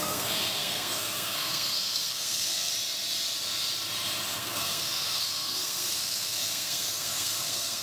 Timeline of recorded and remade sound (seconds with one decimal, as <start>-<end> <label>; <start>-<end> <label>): 0.0-2.7 remade; 2.7-4.4 recorded; 4.4-7.8 remade